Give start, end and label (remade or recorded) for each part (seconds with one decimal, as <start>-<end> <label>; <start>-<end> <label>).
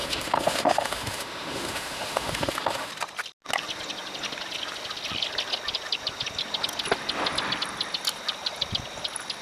0.0-2.9 remade; 2.9-9.4 recorded